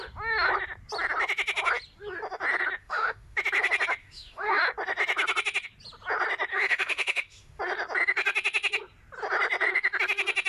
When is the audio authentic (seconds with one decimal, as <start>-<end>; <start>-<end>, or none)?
0.0-2.8; 3.4-4.0; 4.6-6.5; 7.6-10.5